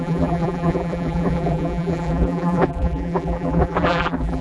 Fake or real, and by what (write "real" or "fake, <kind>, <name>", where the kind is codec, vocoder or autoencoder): fake, vocoder, BigVGAN v2